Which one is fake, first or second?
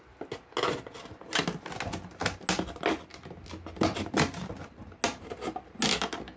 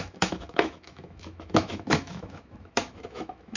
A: second